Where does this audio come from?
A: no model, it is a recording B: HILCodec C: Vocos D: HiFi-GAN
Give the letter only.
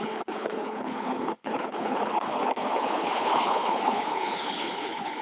B